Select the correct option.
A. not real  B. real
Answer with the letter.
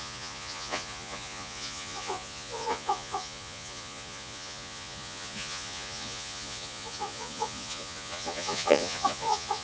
A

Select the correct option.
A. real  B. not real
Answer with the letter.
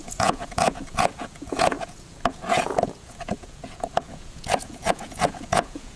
B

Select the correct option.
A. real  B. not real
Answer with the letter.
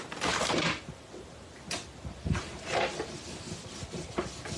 A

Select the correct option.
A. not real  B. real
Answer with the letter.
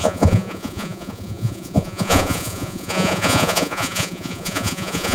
A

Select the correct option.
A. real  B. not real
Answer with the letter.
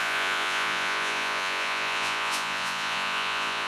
B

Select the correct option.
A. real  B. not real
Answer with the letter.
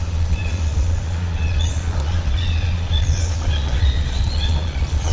B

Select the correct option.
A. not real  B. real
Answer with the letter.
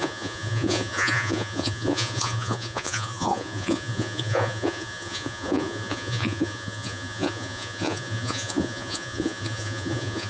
A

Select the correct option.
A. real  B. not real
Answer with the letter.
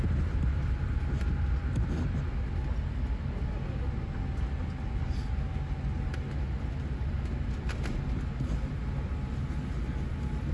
A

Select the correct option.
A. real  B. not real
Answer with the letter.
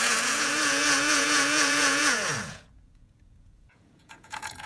B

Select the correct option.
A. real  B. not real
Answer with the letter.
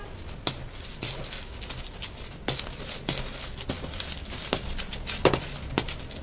A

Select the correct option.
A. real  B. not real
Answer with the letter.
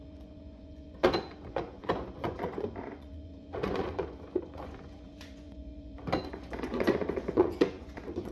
B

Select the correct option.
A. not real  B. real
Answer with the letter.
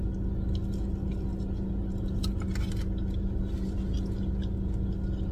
B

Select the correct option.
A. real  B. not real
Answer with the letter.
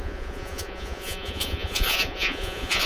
B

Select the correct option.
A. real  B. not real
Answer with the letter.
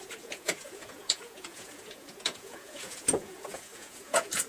B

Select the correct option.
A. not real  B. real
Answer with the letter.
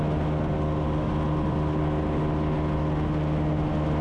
B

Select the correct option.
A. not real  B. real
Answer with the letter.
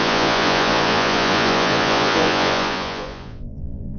A